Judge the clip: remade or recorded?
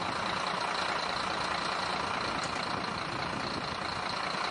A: recorded